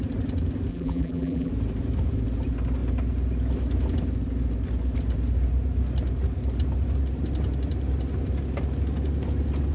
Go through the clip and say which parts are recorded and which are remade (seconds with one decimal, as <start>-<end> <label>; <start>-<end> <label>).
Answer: 0.0-0.7 recorded; 0.7-1.5 remade; 1.5-9.7 recorded